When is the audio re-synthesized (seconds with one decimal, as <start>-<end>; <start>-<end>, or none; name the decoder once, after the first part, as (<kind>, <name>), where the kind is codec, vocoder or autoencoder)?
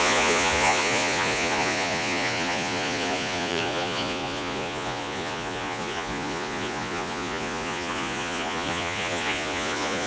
0.0-10.1 (vocoder, Vocos)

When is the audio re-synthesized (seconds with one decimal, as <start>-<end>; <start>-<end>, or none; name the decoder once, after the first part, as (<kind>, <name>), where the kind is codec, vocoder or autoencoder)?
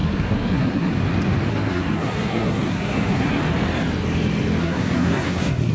0.0-0.9 (codec, SNAC); 1.5-3.4; 4.6-5.7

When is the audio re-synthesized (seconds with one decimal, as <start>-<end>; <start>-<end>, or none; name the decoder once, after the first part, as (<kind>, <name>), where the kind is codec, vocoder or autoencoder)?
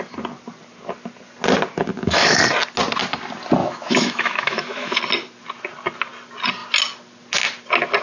1.9-2.4 (autoencoder, DAC-VAE); 3.6-5.0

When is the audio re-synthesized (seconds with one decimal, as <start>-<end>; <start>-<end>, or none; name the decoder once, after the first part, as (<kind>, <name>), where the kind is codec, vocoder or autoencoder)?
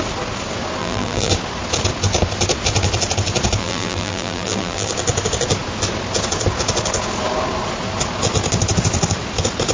0.8-1.3 (vocoder, BigVGAN v2); 3.6-4.9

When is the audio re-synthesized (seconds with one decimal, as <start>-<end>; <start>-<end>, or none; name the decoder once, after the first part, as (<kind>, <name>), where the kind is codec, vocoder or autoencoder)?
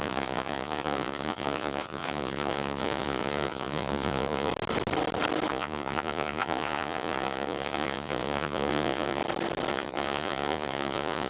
0.0-4.5 (vocoder, Vocos); 5.5-9.2; 9.7-11.3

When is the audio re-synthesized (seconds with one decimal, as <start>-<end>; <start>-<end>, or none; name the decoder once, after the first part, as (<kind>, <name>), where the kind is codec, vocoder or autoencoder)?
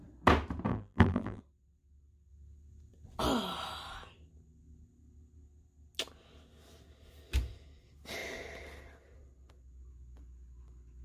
0.7-1.4 (vocoder, BigVGAN v2)